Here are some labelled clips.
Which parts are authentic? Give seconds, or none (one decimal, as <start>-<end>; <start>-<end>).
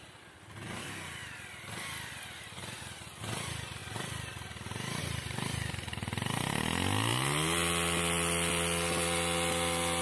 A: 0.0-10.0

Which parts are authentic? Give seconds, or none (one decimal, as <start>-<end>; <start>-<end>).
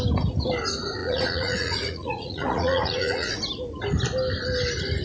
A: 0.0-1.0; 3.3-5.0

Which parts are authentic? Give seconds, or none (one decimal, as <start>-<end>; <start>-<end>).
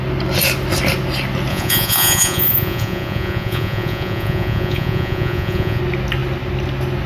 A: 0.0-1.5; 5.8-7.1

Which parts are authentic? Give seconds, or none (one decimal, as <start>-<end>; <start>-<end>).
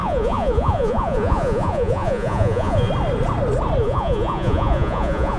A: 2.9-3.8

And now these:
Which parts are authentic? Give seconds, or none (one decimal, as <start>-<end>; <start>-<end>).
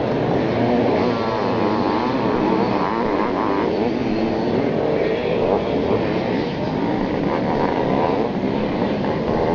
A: 0.0-9.5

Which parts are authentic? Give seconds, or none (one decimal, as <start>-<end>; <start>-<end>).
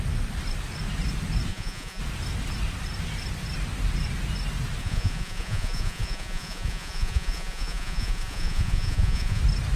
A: 0.0-1.5; 2.0-4.8; 9.4-9.8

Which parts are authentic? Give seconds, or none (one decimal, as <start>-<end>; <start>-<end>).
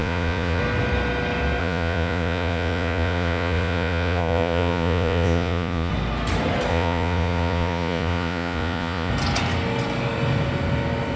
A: 0.6-1.6; 5.9-6.7; 9.1-11.2